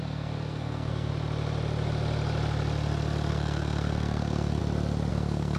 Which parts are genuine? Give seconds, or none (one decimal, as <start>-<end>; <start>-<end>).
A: 1.1-3.3; 4.6-5.1